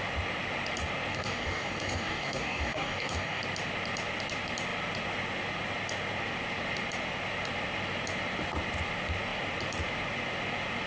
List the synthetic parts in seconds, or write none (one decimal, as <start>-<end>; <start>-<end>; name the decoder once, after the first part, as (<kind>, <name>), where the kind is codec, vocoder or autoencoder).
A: 1.1-3.4 (codec, DAC)

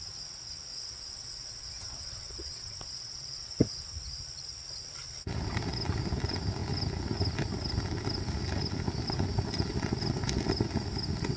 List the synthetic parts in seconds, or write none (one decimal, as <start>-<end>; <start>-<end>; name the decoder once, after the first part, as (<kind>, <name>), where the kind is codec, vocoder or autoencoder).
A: 0.7-3.9 (vocoder, WaveNeXt)

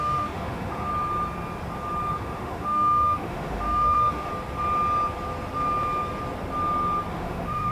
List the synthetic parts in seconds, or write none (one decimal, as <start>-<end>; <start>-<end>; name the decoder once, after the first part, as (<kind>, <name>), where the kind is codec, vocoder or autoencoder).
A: 0.0-0.9 (autoencoder, DAC-VAE); 2.1-4.3; 7.1-7.7

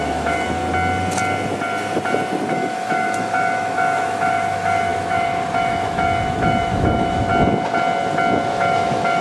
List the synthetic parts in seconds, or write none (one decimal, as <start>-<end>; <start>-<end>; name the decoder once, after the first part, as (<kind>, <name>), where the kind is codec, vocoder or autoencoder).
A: 0.0-0.6 (autoencoder, DAC-VAE); 2.5-7.3; 8.4-9.2

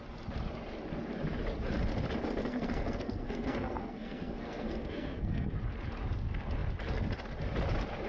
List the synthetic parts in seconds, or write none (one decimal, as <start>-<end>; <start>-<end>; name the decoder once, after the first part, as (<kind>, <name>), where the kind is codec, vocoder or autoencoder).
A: 2.4-5.6 (codec, SNAC)

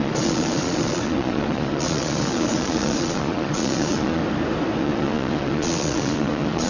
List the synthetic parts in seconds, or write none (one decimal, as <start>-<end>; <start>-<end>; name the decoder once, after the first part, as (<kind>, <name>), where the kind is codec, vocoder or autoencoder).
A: 0.0-4.2 (vocoder, Vocos); 4.8-6.7

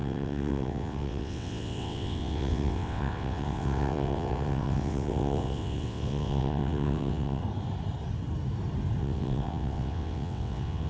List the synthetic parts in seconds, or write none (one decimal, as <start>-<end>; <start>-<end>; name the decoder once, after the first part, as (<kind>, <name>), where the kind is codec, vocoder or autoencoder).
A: 0.0-7.4 (vocoder, WaveNeXt); 9.0-10.9